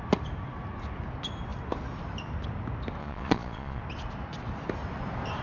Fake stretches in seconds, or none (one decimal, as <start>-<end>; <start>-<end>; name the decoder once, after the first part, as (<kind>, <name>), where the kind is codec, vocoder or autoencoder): 3.0-3.8 (vocoder, Vocos)